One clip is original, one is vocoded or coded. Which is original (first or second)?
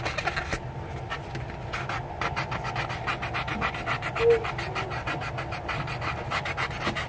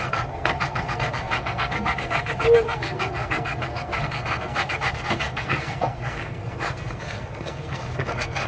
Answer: first